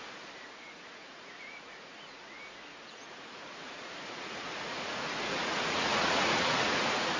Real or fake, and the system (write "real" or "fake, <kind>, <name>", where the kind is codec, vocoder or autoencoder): fake, vocoder, Vocos